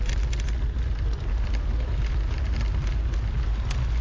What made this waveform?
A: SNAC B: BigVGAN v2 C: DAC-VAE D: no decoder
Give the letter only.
D